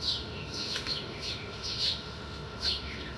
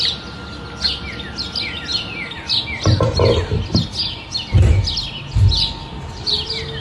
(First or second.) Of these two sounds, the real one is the second